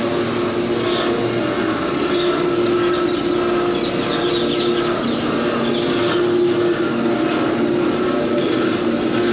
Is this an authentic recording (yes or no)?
yes